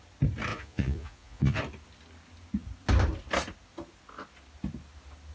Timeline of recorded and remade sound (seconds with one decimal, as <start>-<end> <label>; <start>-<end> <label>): 0.0-0.5 recorded; 0.5-1.6 remade; 1.6-5.3 recorded